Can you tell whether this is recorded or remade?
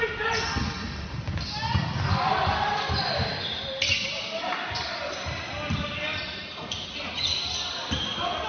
recorded